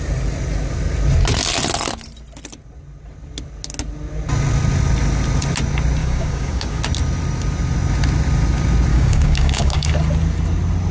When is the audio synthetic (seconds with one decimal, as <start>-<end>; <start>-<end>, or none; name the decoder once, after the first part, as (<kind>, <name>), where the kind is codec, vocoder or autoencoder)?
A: 6.0-6.8 (codec, DAC); 8.9-9.9